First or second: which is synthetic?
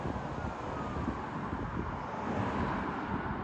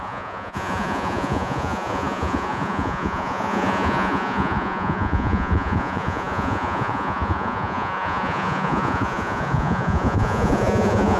second